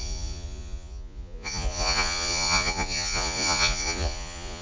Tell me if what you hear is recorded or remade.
remade